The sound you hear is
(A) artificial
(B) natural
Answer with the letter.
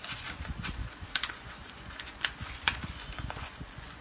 A